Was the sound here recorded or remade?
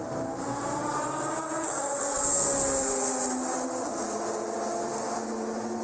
recorded